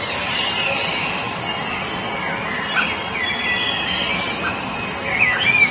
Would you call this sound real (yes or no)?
yes